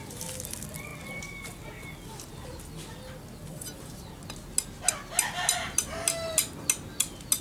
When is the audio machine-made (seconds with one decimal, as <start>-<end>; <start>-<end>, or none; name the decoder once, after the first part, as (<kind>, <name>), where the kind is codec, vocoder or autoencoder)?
none